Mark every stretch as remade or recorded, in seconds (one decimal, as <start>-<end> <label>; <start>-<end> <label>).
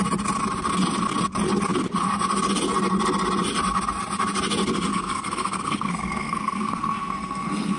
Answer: 0.0-4.9 recorded; 4.9-7.8 remade